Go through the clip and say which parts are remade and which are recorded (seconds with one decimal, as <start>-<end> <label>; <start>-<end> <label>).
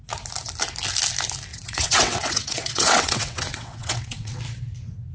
0.0-1.5 recorded; 1.5-4.4 remade; 4.4-5.1 recorded